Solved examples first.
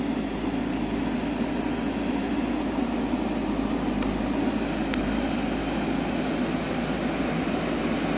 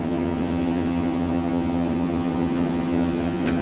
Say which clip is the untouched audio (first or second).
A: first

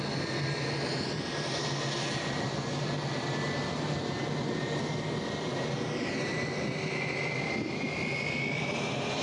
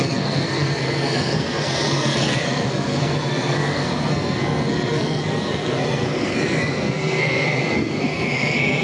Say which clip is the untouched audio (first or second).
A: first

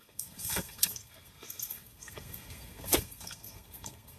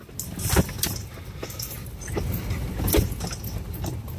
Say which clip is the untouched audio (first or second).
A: second